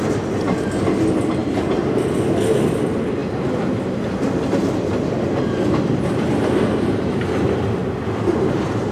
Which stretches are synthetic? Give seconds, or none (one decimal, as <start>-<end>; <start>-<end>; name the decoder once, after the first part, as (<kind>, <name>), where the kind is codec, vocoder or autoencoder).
1.4-2.1 (vocoder, BigVGAN v2)